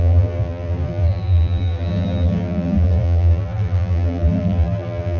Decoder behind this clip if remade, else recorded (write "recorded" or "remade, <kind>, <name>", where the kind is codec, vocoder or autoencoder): remade, vocoder, BigVGAN v2